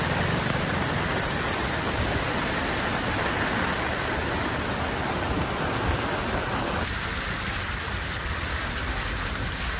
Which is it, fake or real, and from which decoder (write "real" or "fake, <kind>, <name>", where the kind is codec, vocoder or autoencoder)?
real